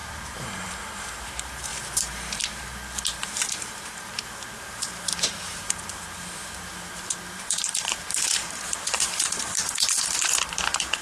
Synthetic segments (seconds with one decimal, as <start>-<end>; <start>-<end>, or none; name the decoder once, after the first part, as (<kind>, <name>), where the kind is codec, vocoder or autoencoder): 1.1-11.0 (vocoder, BigVGAN v2)